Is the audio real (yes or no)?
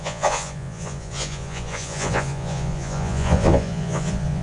no